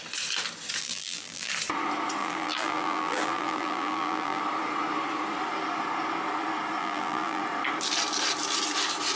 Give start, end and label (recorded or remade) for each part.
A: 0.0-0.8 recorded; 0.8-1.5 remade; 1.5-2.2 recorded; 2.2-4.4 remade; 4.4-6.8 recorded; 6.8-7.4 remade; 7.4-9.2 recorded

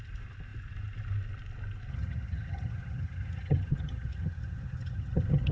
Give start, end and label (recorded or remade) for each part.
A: 0.0-1.9 recorded; 1.9-5.5 remade